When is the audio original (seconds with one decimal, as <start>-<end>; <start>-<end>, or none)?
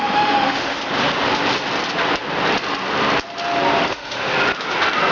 0.8-3.9; 4.3-5.1